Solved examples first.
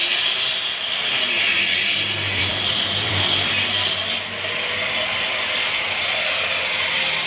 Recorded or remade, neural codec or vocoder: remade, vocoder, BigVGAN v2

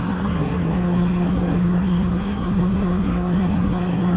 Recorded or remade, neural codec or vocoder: remade, codec, SNAC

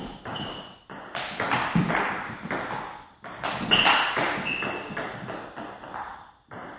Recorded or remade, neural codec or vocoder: recorded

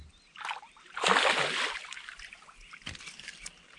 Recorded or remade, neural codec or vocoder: recorded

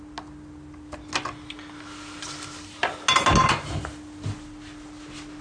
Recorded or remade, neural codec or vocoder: recorded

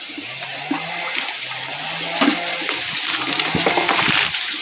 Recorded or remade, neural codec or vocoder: recorded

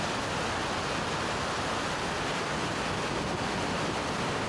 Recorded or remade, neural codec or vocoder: recorded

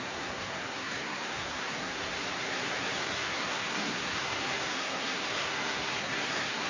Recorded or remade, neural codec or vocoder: remade, codec, SNAC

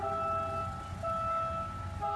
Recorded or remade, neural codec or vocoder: recorded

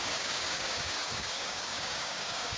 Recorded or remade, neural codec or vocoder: remade, codec, DAC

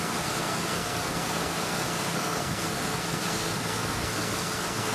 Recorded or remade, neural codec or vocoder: remade, codec, SNAC